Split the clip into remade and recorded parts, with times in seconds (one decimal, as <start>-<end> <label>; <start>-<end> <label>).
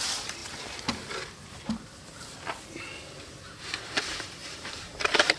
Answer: 0.0-0.4 remade; 0.4-3.6 recorded; 3.6-5.4 remade